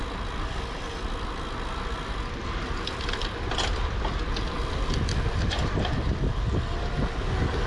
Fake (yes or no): no